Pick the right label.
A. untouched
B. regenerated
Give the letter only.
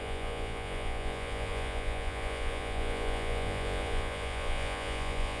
B